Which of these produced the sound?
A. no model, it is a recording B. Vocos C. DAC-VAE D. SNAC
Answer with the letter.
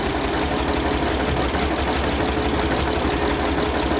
A